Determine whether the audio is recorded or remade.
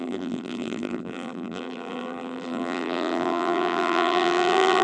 remade